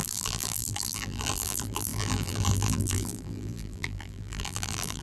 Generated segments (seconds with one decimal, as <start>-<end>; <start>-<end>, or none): 0.0-5.0